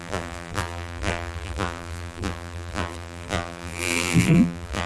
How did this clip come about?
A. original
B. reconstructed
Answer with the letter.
B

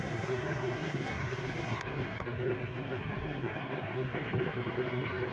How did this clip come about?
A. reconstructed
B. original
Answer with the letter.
A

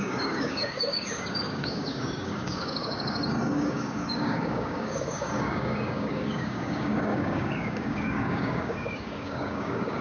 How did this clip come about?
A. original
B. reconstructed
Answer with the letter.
B